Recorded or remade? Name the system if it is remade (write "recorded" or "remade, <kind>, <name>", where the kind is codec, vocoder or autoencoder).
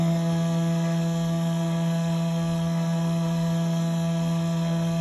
remade, codec, SNAC